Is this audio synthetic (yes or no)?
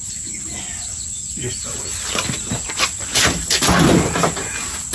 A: no